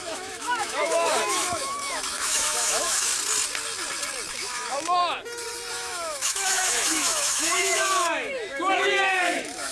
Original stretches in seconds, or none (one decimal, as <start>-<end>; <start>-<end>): 3.1-4.3; 5.0-5.7